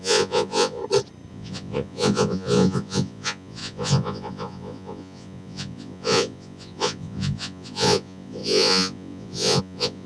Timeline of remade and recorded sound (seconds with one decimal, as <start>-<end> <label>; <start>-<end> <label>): 0.0-0.8 remade; 0.8-1.3 recorded; 1.3-10.1 remade